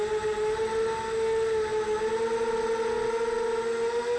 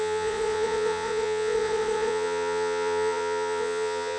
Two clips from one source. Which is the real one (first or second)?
first